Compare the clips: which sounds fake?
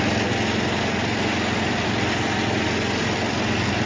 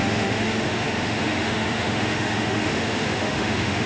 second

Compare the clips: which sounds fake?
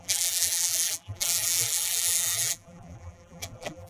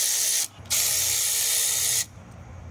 first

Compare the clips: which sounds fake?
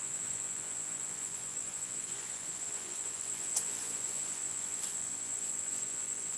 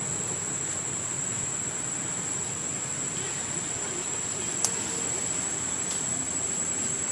first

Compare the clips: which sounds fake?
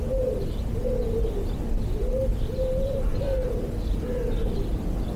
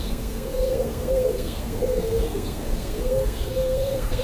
second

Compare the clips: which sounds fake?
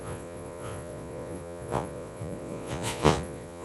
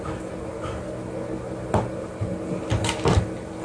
first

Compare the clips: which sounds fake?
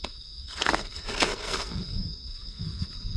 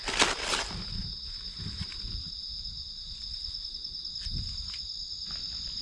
first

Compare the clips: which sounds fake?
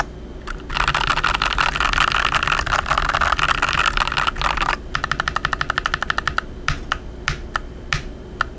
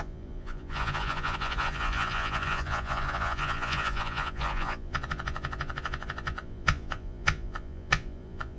second